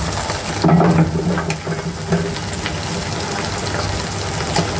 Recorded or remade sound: recorded